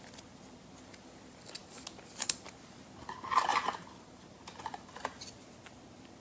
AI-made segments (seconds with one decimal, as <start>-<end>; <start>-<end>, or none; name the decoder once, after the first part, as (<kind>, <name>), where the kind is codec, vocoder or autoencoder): 3.5-5.2 (vocoder, BigVGAN v2)